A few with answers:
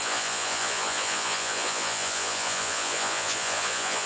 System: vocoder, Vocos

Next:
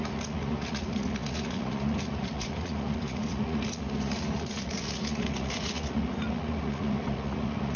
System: vocoder, Vocos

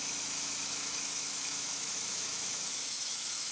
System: autoencoder, DAC-VAE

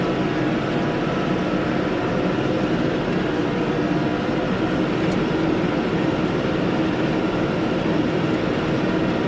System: none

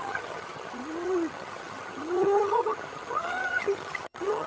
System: vocoder, HiFi-GAN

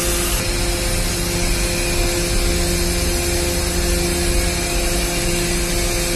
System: none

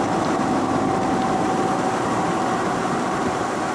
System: vocoder, BigVGAN v2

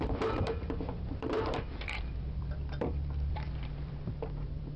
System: vocoder, BigVGAN v2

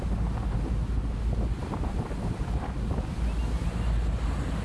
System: none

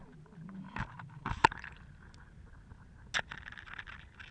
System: none